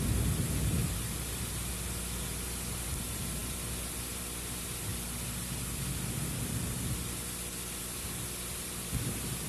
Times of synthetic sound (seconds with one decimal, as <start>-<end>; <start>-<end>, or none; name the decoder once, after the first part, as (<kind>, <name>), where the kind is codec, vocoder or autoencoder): 0.8-1.7 (vocoder, BigVGAN v2)